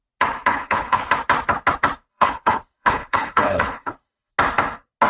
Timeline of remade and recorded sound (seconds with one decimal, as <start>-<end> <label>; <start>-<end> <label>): 0.0-0.5 recorded; 0.5-1.1 remade; 1.1-2.1 recorded; 2.1-4.3 remade; 4.3-5.1 recorded

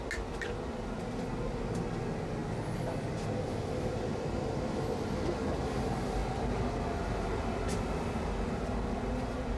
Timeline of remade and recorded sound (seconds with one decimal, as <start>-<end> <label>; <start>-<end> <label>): 0.0-9.6 recorded

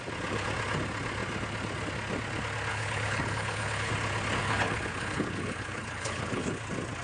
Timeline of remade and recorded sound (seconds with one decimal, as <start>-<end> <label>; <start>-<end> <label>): 0.0-2.7 recorded; 2.7-3.9 remade; 3.9-4.4 recorded; 4.4-6.6 remade; 6.6-7.0 recorded

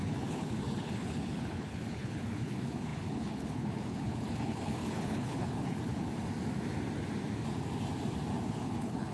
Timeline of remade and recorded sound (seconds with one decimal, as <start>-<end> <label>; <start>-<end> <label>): 0.0-6.1 remade; 6.1-8.5 recorded; 8.5-9.1 remade